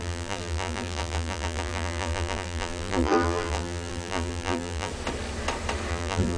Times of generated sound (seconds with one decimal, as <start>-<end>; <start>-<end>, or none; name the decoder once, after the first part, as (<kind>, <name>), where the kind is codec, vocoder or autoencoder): 0.0-4.9 (vocoder, BigVGAN v2); 5.9-6.4